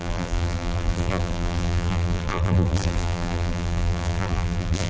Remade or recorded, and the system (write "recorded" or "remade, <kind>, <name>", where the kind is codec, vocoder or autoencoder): remade, vocoder, BigVGAN v2